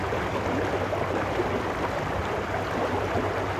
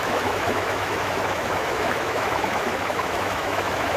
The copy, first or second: second